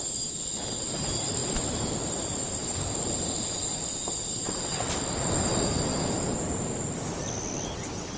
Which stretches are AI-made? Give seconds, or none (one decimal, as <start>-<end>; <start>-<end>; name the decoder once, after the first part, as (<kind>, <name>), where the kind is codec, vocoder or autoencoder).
2.6-4.7 (vocoder, BigVGAN v2)